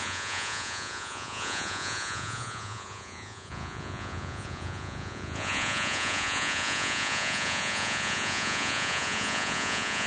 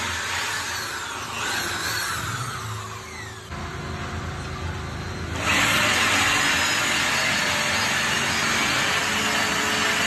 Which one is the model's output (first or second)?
first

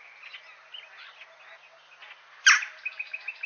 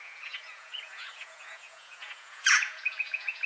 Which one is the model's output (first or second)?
second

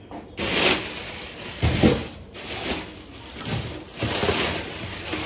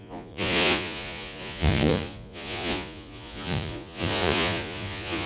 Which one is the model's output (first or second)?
second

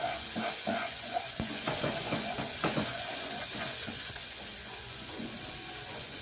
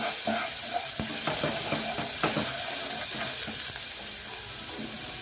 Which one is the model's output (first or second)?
first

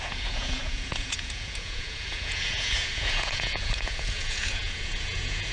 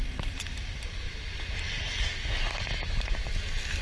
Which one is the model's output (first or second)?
first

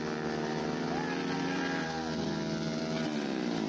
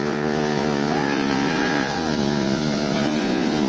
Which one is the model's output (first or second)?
second